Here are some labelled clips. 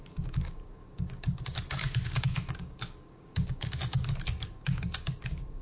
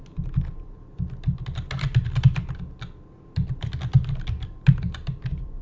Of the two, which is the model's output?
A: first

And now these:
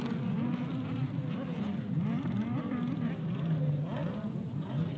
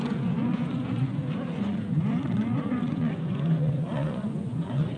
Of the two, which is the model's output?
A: second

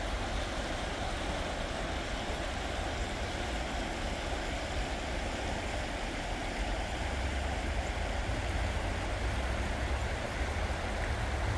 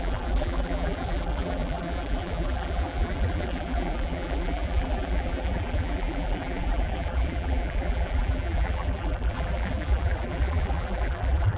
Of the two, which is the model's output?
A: second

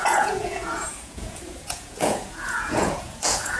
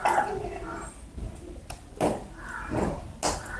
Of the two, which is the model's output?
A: first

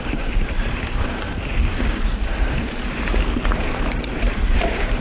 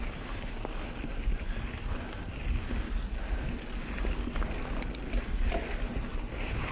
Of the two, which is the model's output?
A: first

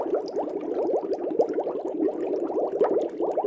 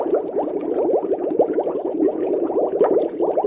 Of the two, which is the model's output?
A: second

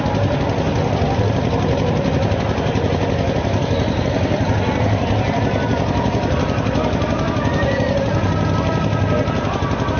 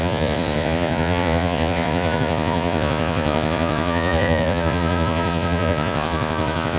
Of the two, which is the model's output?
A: second